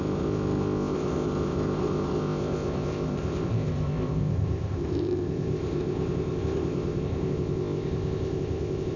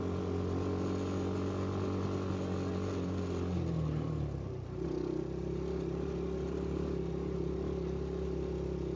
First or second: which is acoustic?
second